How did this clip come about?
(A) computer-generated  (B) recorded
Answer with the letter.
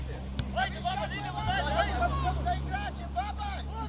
B